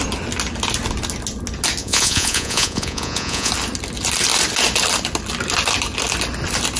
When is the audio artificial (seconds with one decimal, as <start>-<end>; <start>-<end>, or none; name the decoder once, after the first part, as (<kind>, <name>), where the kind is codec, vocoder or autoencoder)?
1.8-3.5 (vocoder, Vocos)

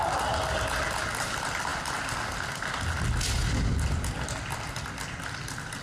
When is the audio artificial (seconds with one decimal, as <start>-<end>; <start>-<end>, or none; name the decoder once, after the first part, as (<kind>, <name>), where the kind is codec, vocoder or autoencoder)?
none

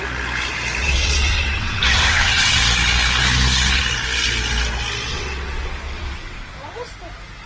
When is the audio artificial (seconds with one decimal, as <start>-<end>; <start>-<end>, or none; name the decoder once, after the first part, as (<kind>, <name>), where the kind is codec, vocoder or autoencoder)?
0.8-2.6 (vocoder, WaveNeXt); 5.1-6.9

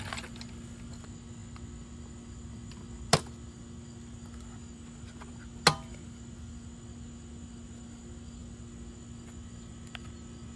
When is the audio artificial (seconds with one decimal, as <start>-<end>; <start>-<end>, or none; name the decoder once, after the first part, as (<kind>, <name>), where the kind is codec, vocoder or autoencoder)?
none

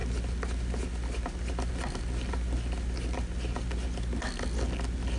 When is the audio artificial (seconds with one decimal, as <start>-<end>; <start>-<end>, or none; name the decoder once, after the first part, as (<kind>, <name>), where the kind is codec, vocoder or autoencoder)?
none